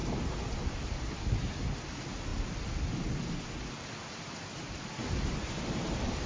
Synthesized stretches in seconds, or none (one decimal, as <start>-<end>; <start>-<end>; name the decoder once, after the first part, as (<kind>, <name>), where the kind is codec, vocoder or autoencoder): none